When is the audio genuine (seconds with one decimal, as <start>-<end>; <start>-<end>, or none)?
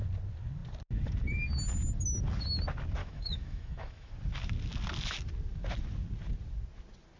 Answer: 0.0-3.0; 4.1-7.2